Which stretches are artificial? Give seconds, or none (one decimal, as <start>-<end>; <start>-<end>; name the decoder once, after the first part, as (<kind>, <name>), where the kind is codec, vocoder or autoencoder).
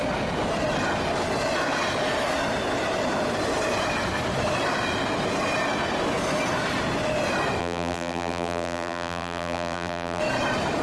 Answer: 7.6-10.2 (vocoder, BigVGAN v2)